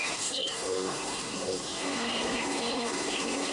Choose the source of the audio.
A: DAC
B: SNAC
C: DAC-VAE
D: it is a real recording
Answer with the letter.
B